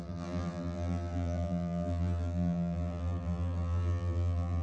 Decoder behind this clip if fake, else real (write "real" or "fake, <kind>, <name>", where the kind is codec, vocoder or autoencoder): fake, vocoder, BigVGAN v2